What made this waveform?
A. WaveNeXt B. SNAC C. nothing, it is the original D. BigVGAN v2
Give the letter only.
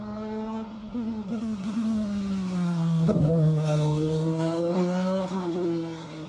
B